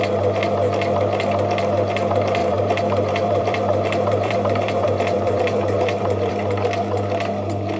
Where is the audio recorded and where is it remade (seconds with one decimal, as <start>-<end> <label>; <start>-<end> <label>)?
0.0-2.4 recorded; 2.4-6.3 remade; 6.3-7.8 recorded